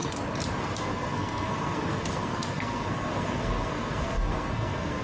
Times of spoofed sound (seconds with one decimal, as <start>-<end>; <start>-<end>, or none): 0.6-5.0